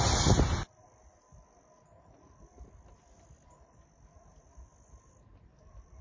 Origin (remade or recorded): recorded